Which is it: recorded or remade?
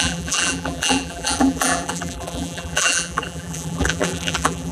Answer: remade